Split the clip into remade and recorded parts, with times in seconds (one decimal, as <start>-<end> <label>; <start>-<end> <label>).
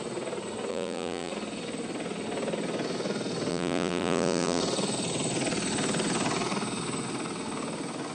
0.0-0.7 recorded; 0.7-1.3 remade; 1.3-3.5 recorded; 3.5-4.6 remade; 4.6-8.1 recorded